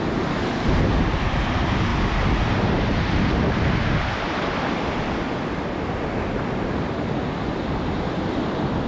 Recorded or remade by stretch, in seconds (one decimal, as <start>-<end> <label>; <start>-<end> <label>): 0.0-8.9 recorded